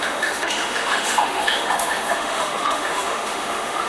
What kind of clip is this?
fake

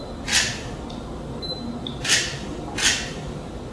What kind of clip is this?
real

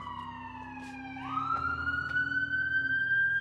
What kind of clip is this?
real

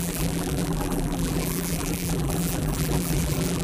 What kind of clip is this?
fake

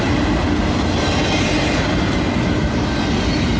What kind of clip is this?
real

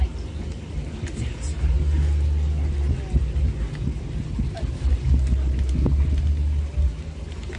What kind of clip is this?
real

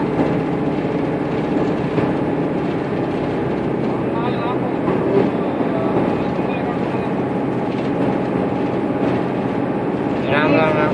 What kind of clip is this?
real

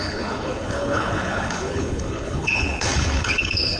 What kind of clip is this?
fake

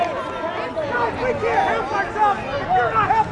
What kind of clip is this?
real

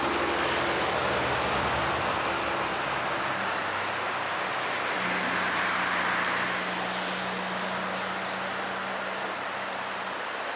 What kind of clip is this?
real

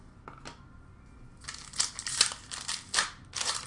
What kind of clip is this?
real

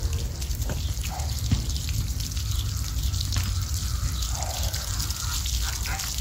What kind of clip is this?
real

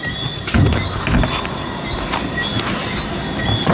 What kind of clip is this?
real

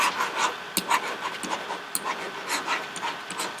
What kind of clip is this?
real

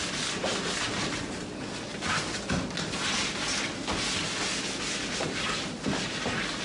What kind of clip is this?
real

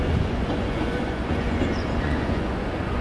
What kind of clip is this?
fake